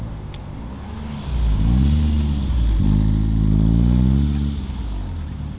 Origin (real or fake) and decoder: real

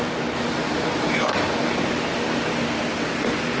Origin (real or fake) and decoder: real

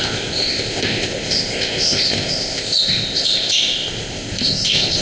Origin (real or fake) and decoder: fake, codec, ZipCodec